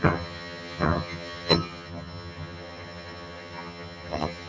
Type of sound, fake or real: fake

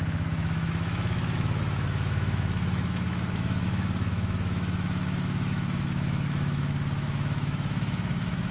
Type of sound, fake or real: fake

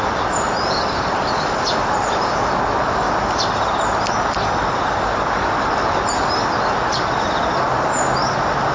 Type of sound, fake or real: real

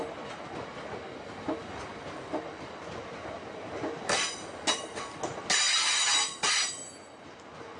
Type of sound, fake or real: real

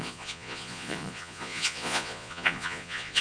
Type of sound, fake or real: fake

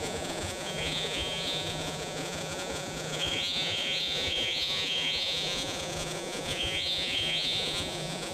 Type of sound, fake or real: fake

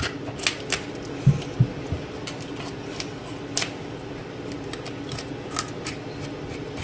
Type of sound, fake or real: real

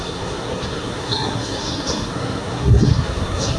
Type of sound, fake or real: fake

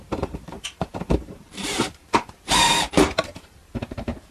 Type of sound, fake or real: fake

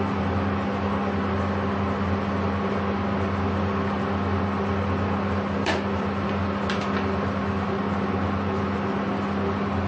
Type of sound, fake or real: real